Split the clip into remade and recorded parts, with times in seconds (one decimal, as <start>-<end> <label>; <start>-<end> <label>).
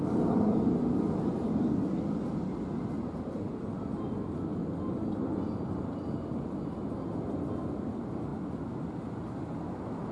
0.0-10.1 recorded